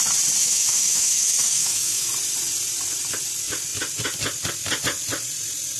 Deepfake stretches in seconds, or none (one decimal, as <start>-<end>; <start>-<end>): 0.4-2.1